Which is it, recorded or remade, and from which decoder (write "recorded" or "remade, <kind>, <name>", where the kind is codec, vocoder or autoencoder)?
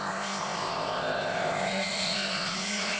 remade, codec, ZipCodec